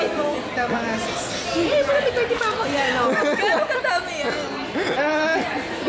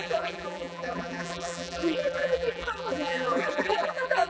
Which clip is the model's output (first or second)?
second